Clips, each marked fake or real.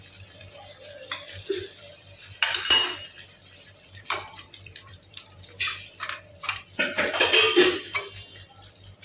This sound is fake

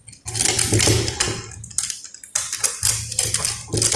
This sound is real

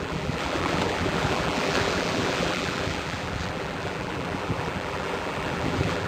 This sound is fake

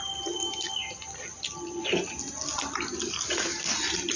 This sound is real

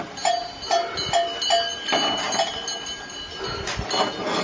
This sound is real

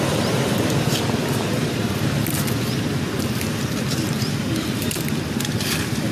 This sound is fake